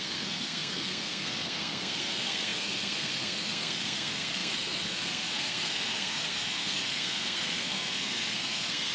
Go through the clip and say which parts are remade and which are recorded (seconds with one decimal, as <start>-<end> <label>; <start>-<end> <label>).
0.0-8.9 remade